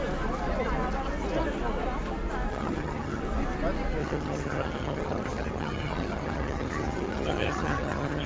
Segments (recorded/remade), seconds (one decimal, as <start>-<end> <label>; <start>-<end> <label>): 0.0-2.5 recorded; 2.5-3.2 remade; 3.2-4.0 recorded; 4.0-8.3 remade